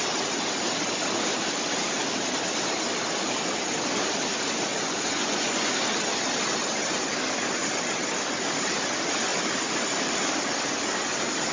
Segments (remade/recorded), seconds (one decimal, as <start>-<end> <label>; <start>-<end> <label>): 0.0-4.7 recorded; 4.7-5.7 remade; 5.7-11.5 recorded